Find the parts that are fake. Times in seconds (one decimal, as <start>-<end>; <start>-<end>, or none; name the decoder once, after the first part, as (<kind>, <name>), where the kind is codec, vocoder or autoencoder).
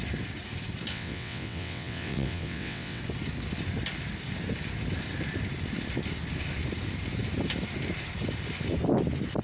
0.9-3.0 (vocoder, WaveNeXt)